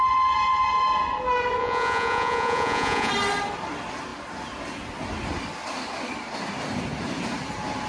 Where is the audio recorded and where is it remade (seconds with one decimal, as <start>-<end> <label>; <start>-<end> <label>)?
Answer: 0.0-1.6 recorded; 1.6-3.1 remade; 3.1-7.9 recorded